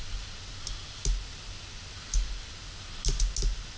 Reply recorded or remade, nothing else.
recorded